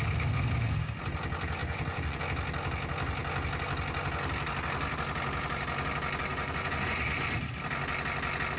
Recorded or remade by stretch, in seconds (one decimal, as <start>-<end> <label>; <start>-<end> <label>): 0.0-1.6 recorded; 1.6-2.2 remade; 2.2-6.3 recorded; 6.3-7.0 remade; 7.0-8.6 recorded